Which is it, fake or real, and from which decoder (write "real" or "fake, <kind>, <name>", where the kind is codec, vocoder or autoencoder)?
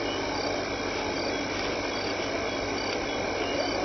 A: real